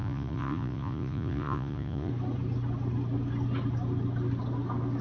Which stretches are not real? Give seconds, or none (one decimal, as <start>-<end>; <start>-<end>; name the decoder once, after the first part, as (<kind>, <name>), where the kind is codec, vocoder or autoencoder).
0.0-2.1 (vocoder, Vocos)